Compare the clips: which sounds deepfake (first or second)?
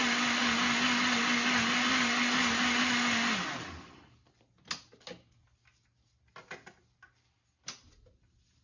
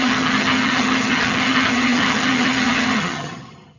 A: second